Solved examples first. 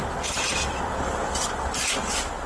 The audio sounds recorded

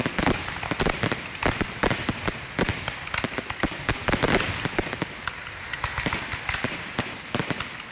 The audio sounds recorded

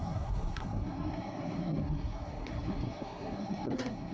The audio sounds remade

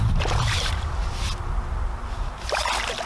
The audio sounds recorded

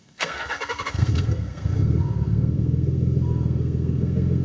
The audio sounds remade